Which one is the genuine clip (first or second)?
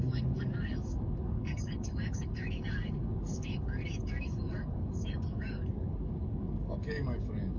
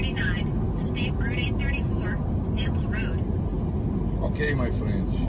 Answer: second